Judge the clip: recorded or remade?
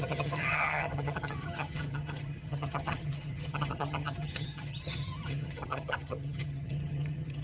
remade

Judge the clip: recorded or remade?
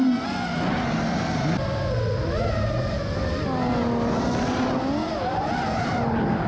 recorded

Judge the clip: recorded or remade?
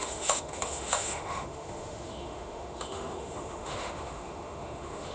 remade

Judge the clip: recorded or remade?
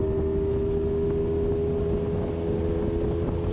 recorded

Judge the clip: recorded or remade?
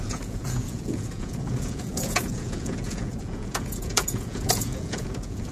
remade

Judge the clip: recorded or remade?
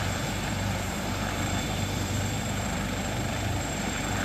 remade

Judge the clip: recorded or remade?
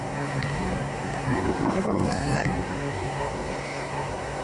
remade